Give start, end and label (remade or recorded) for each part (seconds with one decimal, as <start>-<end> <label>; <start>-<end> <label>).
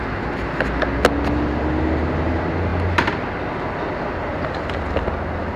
0.0-5.6 recorded